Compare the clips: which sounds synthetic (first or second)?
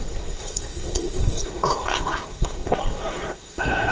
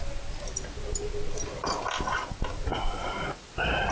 first